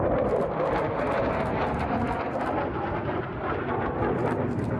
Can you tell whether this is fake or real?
real